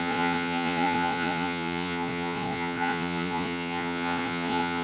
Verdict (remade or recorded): remade